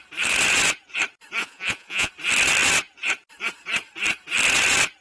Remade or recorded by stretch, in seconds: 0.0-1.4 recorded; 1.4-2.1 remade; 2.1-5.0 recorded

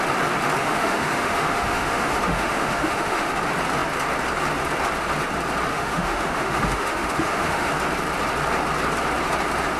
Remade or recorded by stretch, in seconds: 0.0-0.6 recorded; 0.6-3.3 remade; 3.3-5.7 recorded; 5.7-7.7 remade; 7.7-9.8 recorded